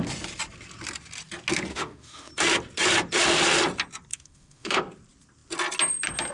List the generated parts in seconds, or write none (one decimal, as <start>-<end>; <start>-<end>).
1.7-2.3; 4.1-4.8